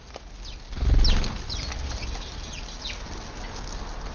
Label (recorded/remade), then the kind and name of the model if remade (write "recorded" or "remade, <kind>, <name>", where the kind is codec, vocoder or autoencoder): recorded